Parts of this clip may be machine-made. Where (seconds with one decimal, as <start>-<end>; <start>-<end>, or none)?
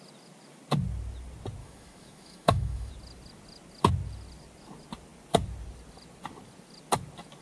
1.6-2.9